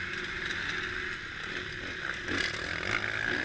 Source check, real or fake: real